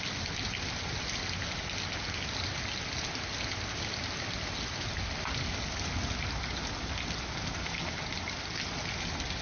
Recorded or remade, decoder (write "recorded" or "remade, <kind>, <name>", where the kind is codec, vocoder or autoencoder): recorded